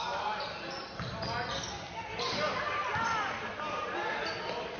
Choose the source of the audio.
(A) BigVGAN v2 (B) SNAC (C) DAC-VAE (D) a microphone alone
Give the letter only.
D